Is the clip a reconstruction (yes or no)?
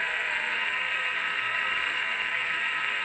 yes